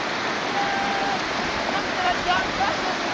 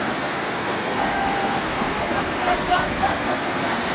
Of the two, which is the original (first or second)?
first